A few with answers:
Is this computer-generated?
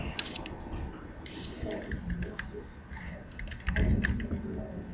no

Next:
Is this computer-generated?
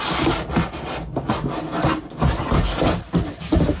no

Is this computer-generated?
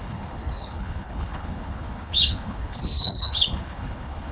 yes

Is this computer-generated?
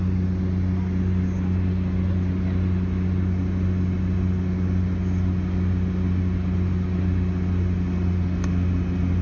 no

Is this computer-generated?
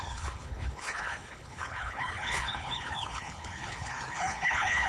yes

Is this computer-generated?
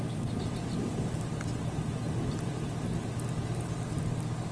no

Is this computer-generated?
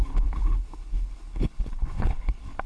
yes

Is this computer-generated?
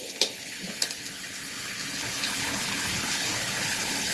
yes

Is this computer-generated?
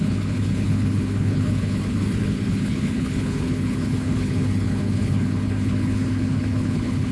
yes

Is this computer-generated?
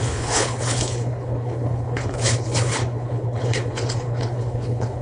yes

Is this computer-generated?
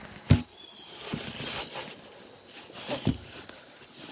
no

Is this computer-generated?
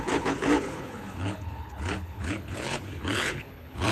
yes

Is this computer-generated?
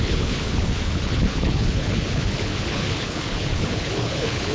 yes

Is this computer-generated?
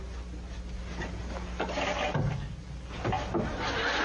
no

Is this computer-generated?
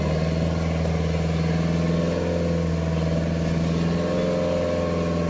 no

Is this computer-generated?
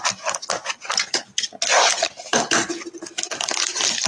no